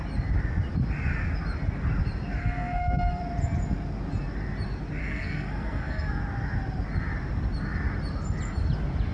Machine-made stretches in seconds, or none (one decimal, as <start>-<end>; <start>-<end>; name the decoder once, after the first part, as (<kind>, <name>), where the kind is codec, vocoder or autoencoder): 2.4-3.2 (codec, SNAC); 5.0-6.2